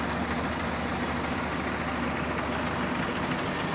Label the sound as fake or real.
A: real